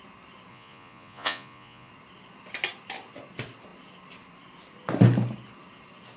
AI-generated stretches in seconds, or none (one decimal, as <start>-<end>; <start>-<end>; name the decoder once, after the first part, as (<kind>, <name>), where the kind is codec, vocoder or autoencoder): 0.5-1.9 (vocoder, Vocos)